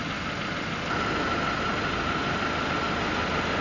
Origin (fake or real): real